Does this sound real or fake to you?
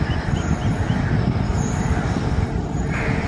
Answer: real